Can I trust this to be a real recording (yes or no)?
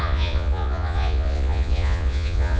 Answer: no